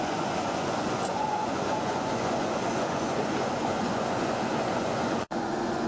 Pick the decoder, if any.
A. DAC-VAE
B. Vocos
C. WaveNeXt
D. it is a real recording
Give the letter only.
B